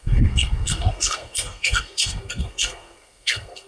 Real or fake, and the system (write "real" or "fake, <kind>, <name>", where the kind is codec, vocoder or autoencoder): fake, codec, SNAC